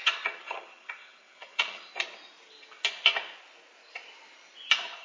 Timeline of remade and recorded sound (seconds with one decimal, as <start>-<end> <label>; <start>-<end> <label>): 0.0-1.9 remade; 1.9-5.0 recorded